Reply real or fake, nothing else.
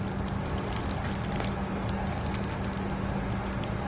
real